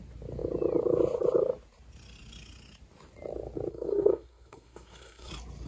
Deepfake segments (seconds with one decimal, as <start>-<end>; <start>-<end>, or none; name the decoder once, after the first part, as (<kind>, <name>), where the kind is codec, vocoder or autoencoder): 3.7-5.3 (codec, SNAC)